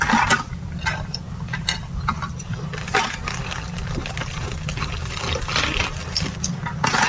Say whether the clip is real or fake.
real